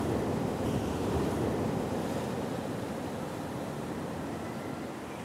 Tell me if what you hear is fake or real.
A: fake